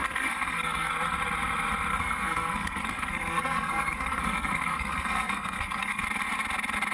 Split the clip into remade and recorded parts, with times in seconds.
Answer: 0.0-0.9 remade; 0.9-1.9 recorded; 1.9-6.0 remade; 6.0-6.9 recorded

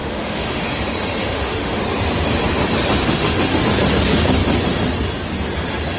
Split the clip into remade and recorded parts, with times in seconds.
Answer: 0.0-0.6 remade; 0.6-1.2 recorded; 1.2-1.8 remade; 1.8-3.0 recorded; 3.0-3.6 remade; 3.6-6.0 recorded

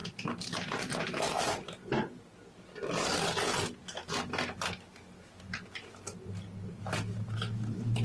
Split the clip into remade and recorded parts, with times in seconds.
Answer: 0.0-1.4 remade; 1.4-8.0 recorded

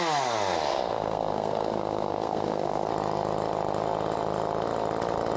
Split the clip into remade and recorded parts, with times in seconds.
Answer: 0.0-0.7 recorded; 0.7-2.9 remade; 2.9-5.4 recorded

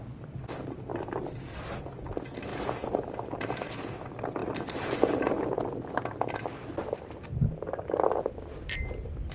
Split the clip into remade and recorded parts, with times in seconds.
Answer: 0.0-2.5 recorded; 2.5-3.7 remade; 3.7-9.3 recorded